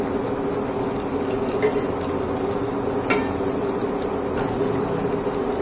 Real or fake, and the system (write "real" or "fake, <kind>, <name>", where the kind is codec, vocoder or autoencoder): real